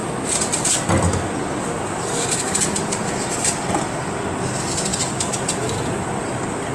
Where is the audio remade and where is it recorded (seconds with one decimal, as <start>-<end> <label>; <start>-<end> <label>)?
0.0-6.7 recorded